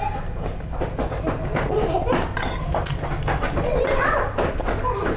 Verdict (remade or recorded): recorded